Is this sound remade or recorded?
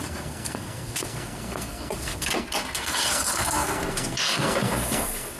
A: remade